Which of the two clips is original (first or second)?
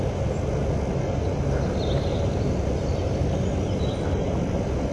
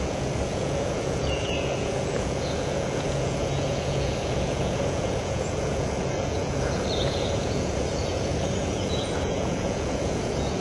first